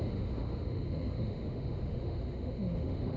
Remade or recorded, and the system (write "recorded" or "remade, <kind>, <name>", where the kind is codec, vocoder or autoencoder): remade, autoencoder, DAC-VAE